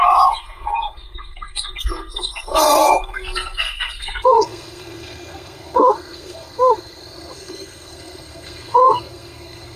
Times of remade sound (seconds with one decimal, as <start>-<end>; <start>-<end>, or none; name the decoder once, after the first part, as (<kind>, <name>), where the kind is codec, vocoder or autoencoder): 0.0-9.8 (codec, SNAC)